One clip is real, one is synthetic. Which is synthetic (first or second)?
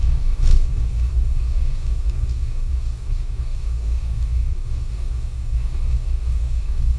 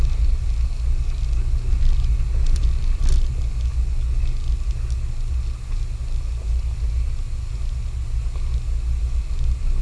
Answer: first